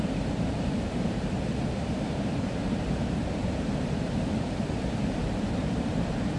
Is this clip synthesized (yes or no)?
yes